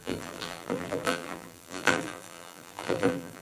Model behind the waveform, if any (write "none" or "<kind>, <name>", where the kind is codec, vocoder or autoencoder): vocoder, BigVGAN v2